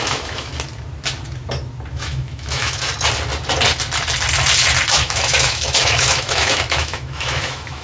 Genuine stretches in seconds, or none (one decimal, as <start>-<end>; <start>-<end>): 0.5-1.9; 2.9-4.9